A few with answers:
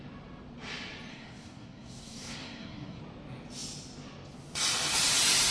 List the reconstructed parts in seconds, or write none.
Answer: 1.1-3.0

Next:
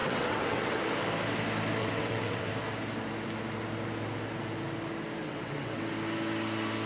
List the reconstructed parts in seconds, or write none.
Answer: 0.0-0.8; 1.8-2.5; 5.2-5.8

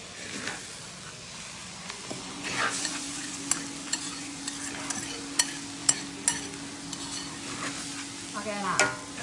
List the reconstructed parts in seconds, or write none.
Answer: 1.6-3.4; 3.8-4.4

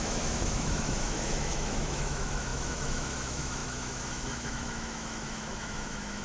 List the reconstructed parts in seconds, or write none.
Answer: 0.0-6.2